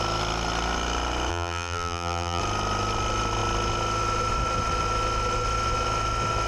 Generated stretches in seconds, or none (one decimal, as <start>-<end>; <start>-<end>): 1.3-2.4